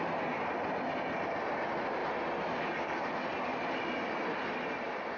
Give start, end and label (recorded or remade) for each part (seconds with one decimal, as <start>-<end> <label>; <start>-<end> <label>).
0.0-5.2 recorded